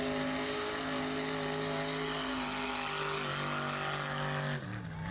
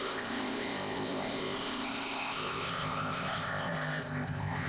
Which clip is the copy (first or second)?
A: second